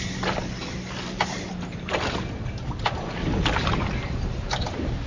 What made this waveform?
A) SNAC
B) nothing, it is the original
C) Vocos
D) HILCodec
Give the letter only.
B